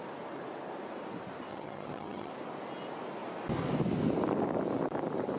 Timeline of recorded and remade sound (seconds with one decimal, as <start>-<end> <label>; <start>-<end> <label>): 0.0-1.5 recorded; 1.5-2.3 remade; 2.3-5.4 recorded